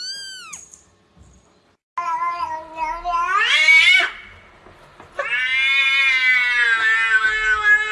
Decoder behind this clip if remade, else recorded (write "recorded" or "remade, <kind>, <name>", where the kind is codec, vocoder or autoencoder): recorded